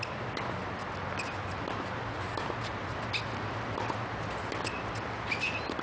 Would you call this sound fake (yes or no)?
no